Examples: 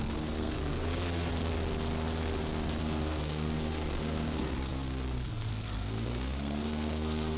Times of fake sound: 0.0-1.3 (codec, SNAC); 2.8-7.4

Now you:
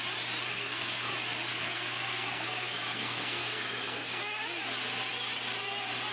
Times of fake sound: 0.5-1.1 (codec, SNAC); 1.5-4.2

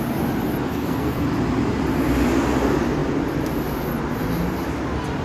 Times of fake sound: 0.7-1.3 (codec, SNAC)

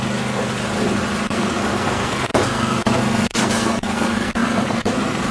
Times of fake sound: 0.0-0.5 (codec, SNAC); 1.3-5.3